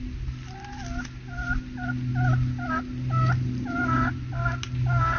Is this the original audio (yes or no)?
yes